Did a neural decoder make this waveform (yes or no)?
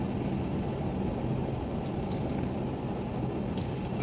no